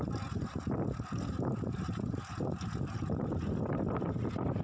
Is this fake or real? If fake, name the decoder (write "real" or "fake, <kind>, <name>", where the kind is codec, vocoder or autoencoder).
fake, vocoder, BigVGAN v2